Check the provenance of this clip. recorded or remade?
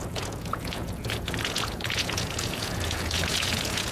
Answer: remade